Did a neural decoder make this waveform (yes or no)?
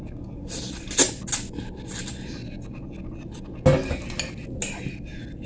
no